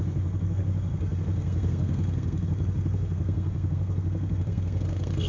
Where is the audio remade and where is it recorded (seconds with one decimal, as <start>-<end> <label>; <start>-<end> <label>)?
0.0-5.3 remade